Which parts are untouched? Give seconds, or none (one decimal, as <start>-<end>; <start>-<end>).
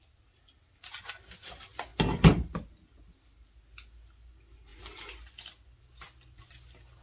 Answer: 0.0-7.0